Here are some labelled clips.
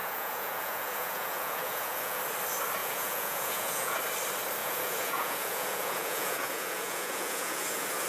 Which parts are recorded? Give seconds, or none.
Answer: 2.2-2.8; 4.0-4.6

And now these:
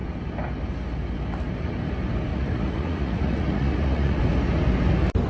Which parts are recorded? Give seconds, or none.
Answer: 0.0-2.3; 4.2-5.3

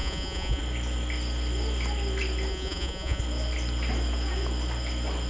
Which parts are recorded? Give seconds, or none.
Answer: 0.6-2.5; 3.2-5.3

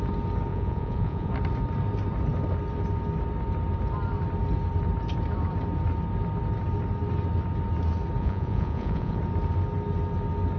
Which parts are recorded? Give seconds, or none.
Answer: 0.0-0.5; 1.3-8.2; 9.2-10.6

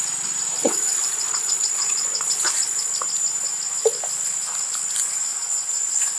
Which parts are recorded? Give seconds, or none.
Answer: 0.0-0.6; 2.9-6.2